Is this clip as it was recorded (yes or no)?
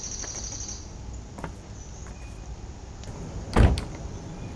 yes